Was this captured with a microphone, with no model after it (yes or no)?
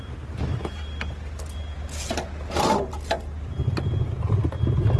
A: yes